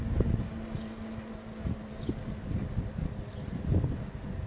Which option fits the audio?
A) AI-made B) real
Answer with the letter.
B